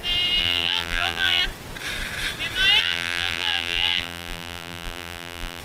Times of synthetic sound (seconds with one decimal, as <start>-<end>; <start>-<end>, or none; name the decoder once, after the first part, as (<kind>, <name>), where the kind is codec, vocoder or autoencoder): 0.4-1.4 (vocoder, BigVGAN v2); 2.8-5.6